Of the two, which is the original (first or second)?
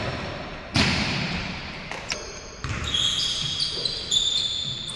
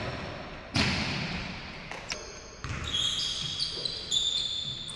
second